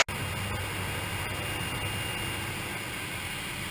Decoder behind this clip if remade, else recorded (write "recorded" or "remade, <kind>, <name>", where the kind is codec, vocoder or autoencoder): recorded